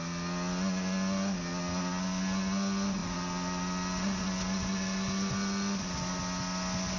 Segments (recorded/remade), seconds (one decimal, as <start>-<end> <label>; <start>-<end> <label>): 0.0-7.0 recorded